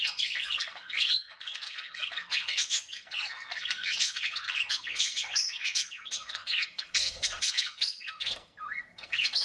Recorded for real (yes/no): no